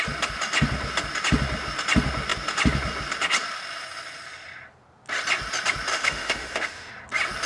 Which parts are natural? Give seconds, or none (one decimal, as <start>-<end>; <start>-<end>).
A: 0.0-5.9; 6.9-7.5

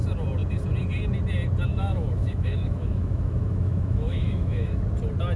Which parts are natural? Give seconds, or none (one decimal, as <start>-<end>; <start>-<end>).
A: 0.0-1.7; 4.8-5.4

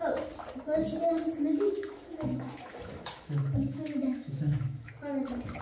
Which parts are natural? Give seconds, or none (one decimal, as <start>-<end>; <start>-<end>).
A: 0.0-1.5; 4.9-5.6

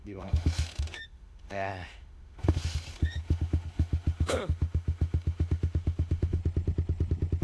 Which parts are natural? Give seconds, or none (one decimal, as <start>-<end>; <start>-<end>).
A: 6.4-7.4

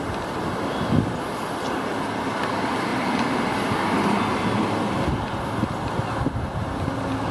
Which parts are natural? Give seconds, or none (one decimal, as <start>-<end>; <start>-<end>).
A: 0.0-7.3

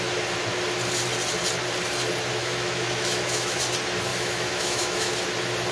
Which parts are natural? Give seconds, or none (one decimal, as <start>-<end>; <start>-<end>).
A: 0.0-2.4; 3.6-4.1; 5.1-5.7